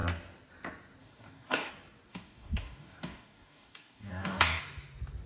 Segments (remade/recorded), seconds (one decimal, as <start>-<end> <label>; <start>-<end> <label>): 0.0-1.0 recorded; 1.0-1.7 remade; 1.7-2.1 recorded; 2.1-4.6 remade; 4.6-5.3 recorded